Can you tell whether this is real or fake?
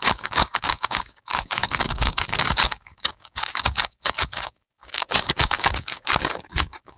fake